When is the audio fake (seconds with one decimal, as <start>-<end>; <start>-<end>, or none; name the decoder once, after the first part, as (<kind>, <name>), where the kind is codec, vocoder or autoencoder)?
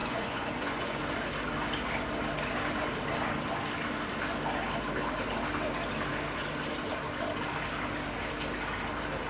0.0-1.0 (vocoder, Vocos)